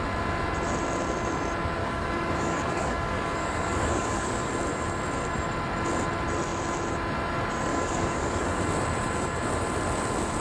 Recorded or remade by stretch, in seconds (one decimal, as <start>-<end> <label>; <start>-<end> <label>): 0.0-1.8 recorded; 1.8-4.5 remade; 4.5-7.7 recorded; 7.7-8.6 remade; 8.6-10.4 recorded